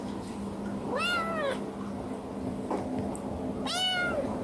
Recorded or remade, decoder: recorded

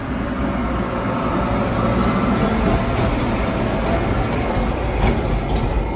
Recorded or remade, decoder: recorded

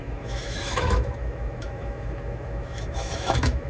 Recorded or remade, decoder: remade, autoencoder, DAC-VAE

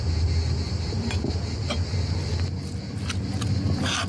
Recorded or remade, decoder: recorded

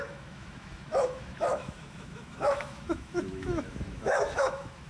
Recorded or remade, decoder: remade, autoencoder, DAC-VAE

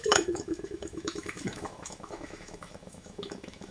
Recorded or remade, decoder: remade, autoencoder, DAC-VAE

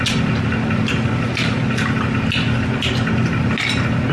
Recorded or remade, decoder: recorded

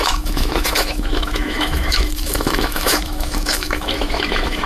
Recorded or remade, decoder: remade, autoencoder, DAC-VAE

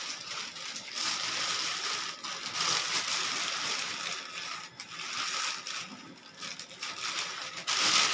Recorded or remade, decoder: recorded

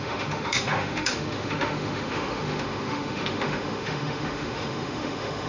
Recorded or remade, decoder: remade, autoencoder, DAC-VAE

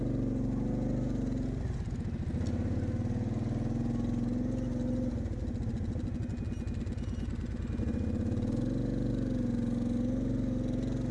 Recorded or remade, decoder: recorded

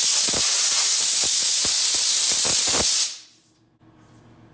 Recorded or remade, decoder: recorded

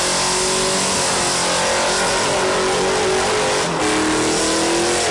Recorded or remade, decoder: recorded